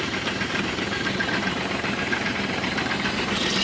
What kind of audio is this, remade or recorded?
remade